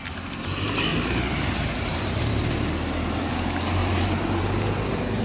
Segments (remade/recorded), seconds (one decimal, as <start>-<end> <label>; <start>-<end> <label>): 0.0-0.9 recorded; 0.9-2.3 remade; 2.3-3.8 recorded; 3.8-5.2 remade